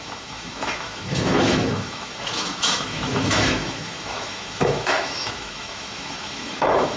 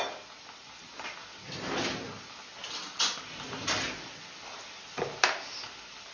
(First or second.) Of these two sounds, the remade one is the first